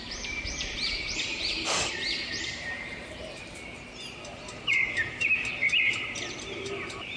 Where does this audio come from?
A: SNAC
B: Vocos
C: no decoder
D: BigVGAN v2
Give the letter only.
D